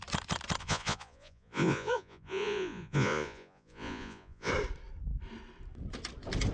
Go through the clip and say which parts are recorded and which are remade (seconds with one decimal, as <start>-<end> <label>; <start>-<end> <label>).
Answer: 0.0-0.6 recorded; 0.6-4.5 remade; 4.5-6.5 recorded